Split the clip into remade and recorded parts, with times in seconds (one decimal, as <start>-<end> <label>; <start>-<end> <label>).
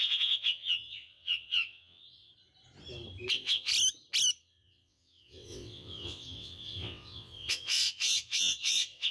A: 0.0-2.3 remade; 2.3-3.3 recorded; 3.3-3.7 remade; 3.7-4.4 recorded; 4.4-9.1 remade